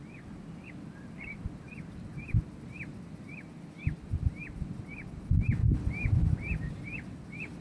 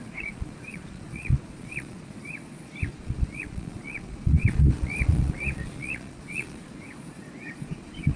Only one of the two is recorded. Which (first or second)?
first